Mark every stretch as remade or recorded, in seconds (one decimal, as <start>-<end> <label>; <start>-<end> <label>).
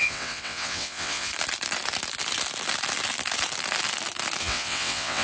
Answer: 0.0-1.3 remade; 1.3-4.4 recorded; 4.4-5.2 remade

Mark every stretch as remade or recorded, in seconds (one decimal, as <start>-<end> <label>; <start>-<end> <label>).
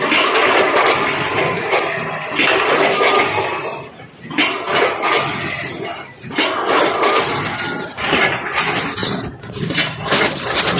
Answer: 0.0-10.8 recorded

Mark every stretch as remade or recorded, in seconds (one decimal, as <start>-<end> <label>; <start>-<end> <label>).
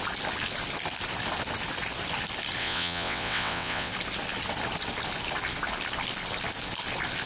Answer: 0.0-2.6 recorded; 2.6-3.9 remade; 3.9-7.3 recorded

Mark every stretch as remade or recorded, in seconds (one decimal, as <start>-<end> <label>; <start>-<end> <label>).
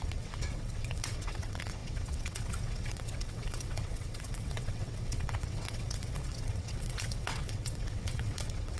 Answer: 0.0-8.8 remade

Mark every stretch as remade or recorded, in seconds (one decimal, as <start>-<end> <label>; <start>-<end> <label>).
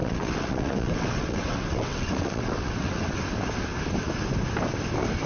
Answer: 0.0-3.2 remade; 3.2-5.3 recorded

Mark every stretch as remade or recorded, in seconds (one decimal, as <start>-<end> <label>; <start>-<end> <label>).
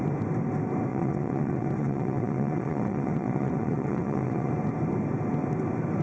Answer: 0.0-0.9 recorded; 0.9-4.5 remade; 4.5-6.0 recorded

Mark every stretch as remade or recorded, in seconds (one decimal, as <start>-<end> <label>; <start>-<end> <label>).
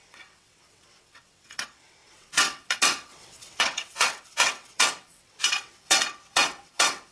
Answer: 0.0-7.1 remade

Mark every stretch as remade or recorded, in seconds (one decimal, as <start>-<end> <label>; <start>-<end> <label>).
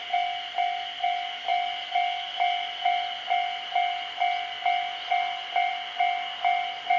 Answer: 0.0-7.0 recorded